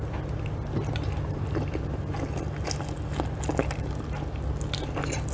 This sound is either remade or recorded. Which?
recorded